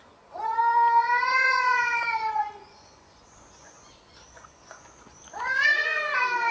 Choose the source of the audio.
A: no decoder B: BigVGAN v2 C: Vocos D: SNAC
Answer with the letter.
C